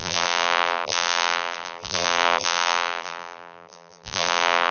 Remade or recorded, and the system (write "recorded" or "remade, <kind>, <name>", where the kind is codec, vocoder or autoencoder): remade, vocoder, BigVGAN v2